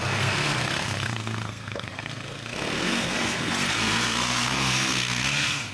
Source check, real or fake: fake